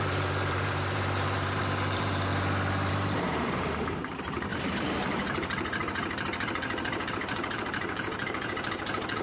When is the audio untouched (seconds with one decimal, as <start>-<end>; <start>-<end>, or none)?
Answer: 2.3-2.9